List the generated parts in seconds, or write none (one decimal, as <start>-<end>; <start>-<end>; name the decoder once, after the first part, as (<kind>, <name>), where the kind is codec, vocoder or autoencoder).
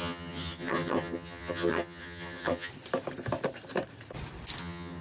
0.0-2.7 (vocoder, HiFi-GAN); 4.6-5.0